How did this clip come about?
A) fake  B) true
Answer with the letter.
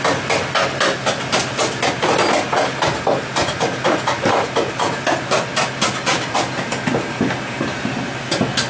B